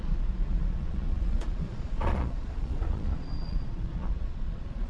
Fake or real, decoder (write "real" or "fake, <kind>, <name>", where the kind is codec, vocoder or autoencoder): fake, vocoder, Vocos